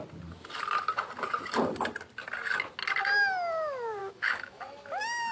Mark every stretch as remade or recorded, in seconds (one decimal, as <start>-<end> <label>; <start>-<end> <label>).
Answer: 0.0-4.0 recorded; 4.0-4.6 remade; 4.6-5.3 recorded